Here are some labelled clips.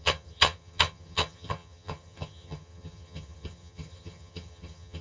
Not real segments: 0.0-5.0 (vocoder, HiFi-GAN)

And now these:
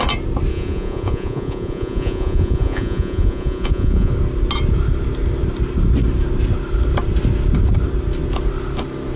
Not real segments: 0.5-4.1 (vocoder, Vocos)